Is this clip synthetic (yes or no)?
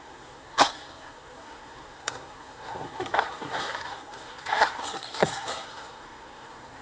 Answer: yes